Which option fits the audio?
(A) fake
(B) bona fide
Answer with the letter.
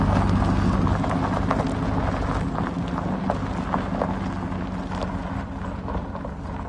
B